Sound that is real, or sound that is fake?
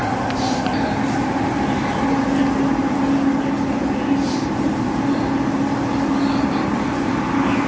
real